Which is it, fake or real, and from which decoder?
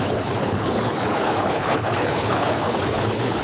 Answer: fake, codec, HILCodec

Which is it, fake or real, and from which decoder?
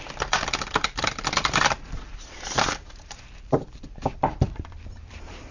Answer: fake, vocoder, BigVGAN v2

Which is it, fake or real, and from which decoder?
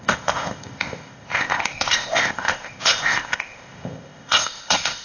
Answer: fake, codec, ZipCodec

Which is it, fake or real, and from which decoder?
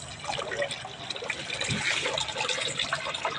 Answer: real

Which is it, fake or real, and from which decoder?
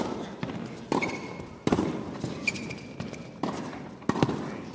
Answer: real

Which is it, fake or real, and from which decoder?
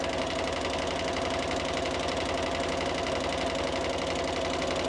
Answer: real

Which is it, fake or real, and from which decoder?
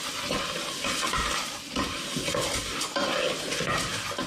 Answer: real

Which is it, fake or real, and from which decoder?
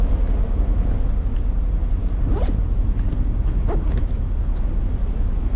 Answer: real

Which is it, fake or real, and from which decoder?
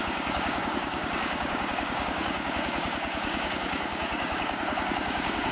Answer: fake, codec, DAC